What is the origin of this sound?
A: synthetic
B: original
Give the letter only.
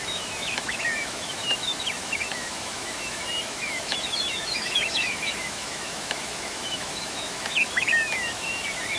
A